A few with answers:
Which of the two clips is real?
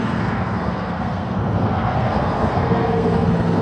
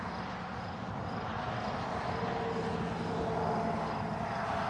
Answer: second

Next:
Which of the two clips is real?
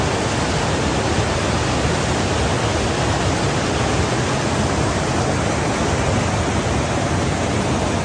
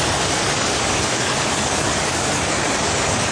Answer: first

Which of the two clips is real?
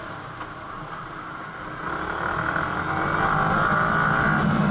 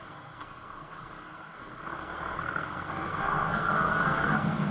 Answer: first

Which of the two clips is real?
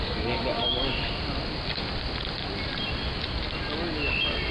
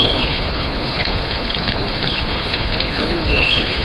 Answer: first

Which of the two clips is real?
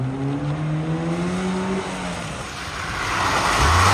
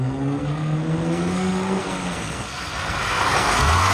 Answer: first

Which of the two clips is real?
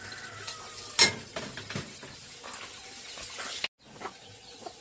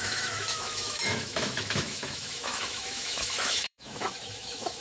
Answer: first